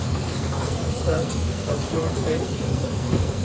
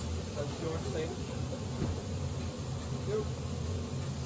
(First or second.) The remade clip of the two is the first